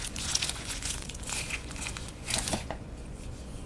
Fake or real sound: fake